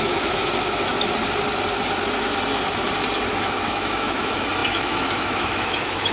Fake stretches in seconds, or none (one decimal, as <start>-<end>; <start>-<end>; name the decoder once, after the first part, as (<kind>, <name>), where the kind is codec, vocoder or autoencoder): 0.0-0.4 (autoencoder, DAC-VAE); 3.3-6.1